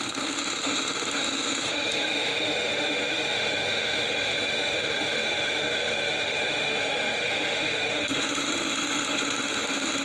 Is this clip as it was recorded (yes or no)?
no